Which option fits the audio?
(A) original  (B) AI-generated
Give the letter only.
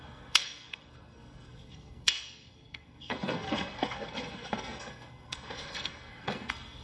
B